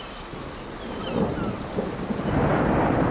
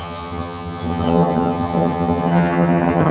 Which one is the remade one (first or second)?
second